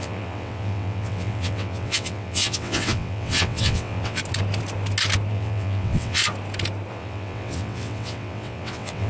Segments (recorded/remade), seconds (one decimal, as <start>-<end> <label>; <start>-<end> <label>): 0.0-4.2 remade; 4.2-5.3 recorded; 5.3-6.2 remade; 6.2-6.9 recorded; 6.9-9.1 remade